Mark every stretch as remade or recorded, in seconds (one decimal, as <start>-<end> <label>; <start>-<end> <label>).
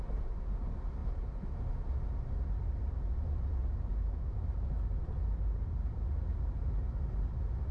0.0-3.9 recorded; 3.9-4.4 remade; 4.4-7.7 recorded